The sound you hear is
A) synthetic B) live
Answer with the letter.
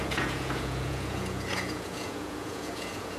A